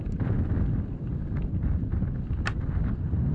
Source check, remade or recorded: recorded